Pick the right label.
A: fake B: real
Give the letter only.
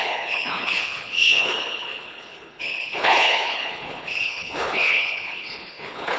A